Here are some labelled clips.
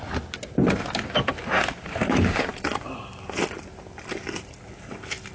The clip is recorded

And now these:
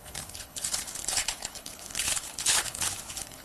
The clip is remade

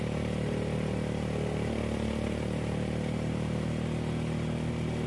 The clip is recorded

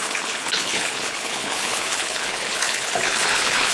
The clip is remade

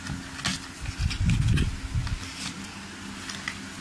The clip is recorded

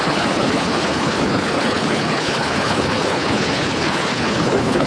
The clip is remade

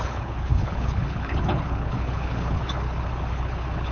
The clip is remade